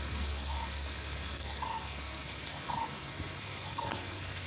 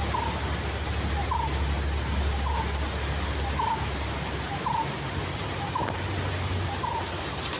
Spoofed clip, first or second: first